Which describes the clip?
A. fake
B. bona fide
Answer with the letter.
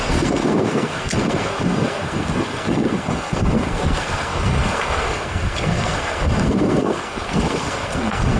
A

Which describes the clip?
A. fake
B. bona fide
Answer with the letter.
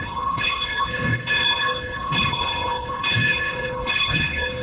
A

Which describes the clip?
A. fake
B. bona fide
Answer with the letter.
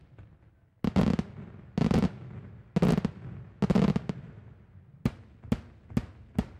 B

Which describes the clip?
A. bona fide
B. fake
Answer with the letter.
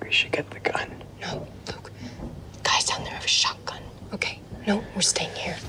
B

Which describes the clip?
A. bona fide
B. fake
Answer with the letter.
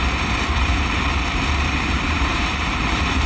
B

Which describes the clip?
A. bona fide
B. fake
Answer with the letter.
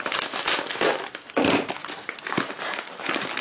A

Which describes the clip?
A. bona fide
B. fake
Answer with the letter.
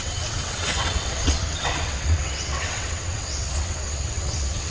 B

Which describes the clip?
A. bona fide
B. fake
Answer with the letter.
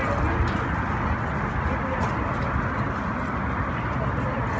A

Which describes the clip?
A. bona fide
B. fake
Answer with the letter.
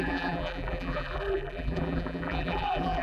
B